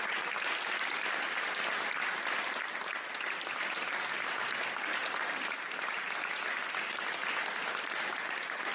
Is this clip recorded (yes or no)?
yes